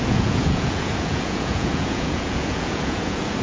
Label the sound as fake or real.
fake